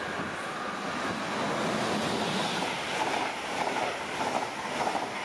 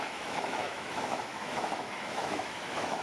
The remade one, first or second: second